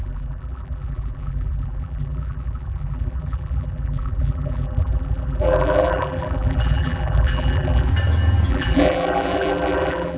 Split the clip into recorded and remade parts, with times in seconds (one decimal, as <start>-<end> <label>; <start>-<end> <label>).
0.0-7.9 remade; 7.9-8.5 recorded; 8.5-10.2 remade

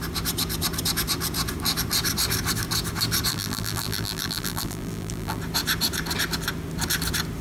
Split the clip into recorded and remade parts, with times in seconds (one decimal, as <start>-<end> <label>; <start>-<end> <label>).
0.0-3.3 recorded; 3.3-5.4 remade; 5.4-7.4 recorded

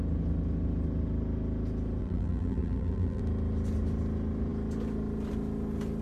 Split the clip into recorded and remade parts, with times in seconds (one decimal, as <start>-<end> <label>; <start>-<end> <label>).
0.0-2.0 recorded; 2.0-3.2 remade; 3.2-6.0 recorded

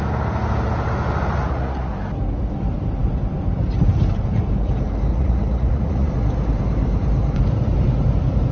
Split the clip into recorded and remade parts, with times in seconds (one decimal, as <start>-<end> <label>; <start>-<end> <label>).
0.0-1.4 recorded; 1.4-1.9 remade; 1.9-5.1 recorded; 5.1-6.1 remade; 6.1-8.5 recorded